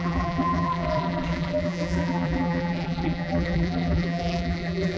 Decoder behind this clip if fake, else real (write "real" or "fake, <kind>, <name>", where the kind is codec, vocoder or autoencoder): fake, vocoder, BigVGAN v2